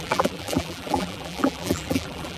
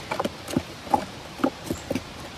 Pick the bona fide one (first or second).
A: second